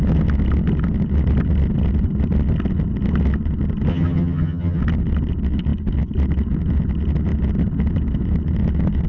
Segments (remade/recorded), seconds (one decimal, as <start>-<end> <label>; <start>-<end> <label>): 0.0-3.9 recorded; 3.9-4.8 remade; 4.8-9.1 recorded